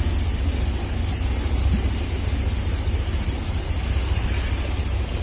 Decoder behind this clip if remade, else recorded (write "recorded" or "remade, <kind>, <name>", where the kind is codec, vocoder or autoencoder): recorded